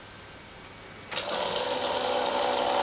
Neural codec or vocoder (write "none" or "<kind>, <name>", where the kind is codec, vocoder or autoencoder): none